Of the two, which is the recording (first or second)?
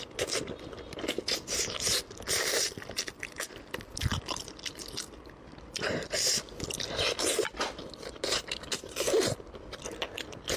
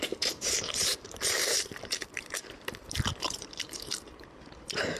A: first